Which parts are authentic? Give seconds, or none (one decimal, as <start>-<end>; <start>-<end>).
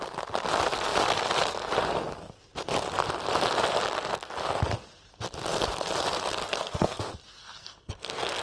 0.0-6.4; 7.0-7.4